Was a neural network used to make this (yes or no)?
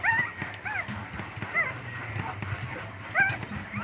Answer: yes